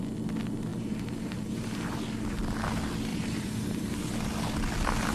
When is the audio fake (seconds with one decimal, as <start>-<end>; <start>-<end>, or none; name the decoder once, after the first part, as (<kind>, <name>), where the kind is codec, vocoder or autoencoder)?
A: 0.7-1.9 (vocoder, BigVGAN v2); 3.1-3.9